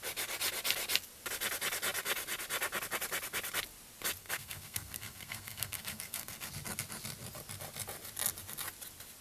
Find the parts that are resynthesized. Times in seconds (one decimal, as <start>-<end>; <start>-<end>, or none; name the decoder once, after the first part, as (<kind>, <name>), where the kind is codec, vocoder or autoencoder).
4.2-6.5 (codec, SNAC)